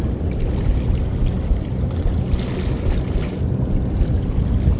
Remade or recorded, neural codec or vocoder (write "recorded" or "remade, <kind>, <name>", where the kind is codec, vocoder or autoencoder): recorded